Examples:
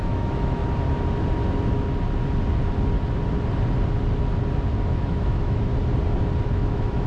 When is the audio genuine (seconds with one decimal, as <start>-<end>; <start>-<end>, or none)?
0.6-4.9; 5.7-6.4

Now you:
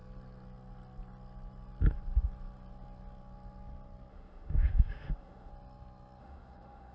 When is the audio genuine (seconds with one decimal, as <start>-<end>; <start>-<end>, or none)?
0.0-4.1; 5.5-6.2

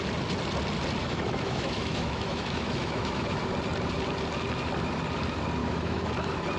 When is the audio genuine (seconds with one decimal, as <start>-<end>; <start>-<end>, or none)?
0.0-1.0; 3.4-5.6; 6.1-6.6

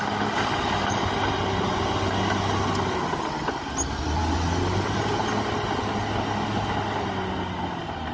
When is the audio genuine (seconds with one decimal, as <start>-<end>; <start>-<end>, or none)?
0.0-8.1

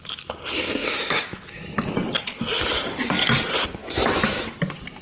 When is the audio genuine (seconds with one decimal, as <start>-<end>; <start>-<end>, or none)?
0.0-0.8; 1.6-3.8; 4.6-5.0

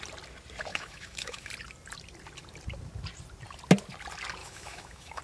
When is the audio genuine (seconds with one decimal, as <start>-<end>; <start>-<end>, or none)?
0.0-0.7; 1.5-4.4